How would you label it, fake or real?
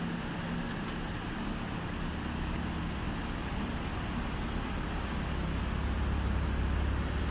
real